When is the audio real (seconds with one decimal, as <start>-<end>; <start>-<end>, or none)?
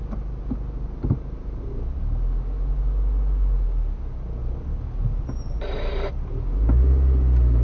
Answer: 0.0-7.6